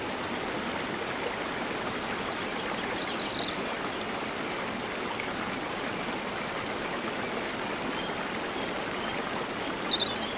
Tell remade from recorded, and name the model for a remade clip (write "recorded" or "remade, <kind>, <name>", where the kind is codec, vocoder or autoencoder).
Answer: recorded